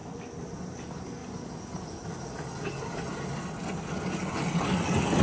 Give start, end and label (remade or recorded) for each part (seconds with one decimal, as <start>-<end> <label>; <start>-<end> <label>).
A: 0.0-5.2 recorded